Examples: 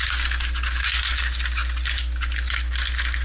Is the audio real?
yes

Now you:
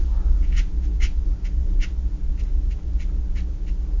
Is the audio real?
yes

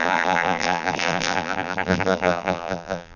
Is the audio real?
no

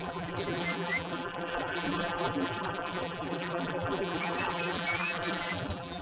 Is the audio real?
no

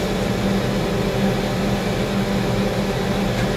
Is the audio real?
yes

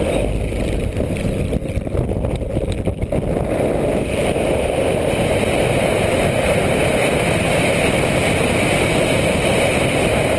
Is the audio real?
yes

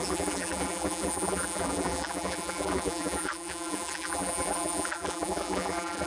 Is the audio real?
no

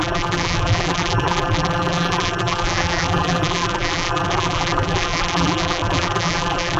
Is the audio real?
no